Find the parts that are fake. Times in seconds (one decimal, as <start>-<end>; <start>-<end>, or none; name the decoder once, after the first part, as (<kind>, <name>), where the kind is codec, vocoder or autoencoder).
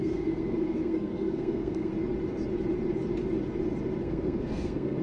0.0-1.9 (codec, SNAC); 4.0-5.0